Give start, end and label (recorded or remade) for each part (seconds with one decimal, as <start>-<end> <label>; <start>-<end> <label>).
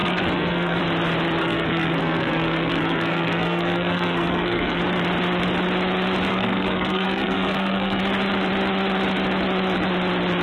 0.0-0.8 remade; 0.8-1.4 recorded; 1.4-4.8 remade; 4.8-6.3 recorded; 6.3-8.0 remade; 8.0-10.4 recorded